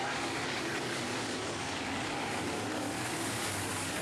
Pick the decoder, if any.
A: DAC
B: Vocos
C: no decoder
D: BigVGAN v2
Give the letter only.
A